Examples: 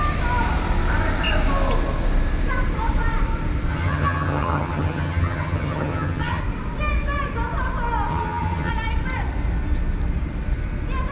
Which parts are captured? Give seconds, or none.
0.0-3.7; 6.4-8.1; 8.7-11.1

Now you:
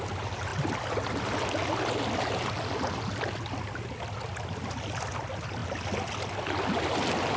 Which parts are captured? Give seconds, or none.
0.0-7.4

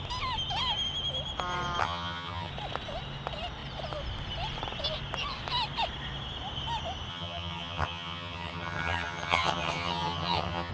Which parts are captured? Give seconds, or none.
0.0-1.8; 2.5-7.1